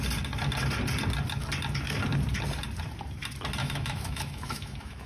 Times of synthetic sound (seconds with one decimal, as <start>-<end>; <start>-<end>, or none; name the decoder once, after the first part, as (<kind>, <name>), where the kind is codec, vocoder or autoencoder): 3.6-5.1 (autoencoder, DAC-VAE)